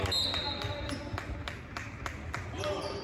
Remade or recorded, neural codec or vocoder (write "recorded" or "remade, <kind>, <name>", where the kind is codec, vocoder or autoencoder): recorded